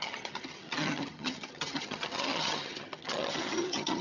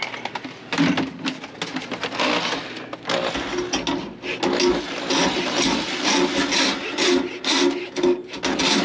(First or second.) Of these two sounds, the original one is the second